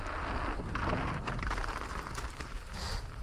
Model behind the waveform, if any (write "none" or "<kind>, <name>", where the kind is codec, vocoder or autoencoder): none